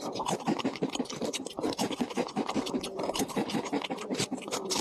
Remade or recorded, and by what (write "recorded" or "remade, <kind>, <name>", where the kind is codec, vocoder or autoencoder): remade, vocoder, BigVGAN v2